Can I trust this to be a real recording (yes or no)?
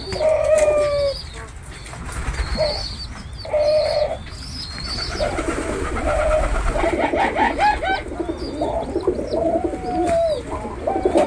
yes